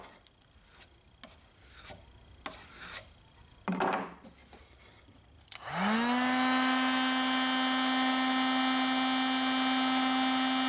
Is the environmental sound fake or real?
real